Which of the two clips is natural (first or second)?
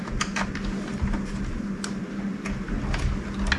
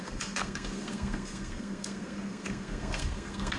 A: first